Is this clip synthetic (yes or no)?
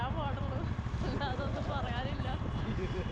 no